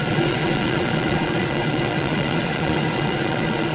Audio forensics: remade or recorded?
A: remade